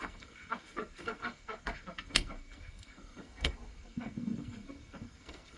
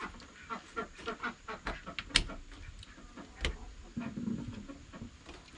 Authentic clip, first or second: second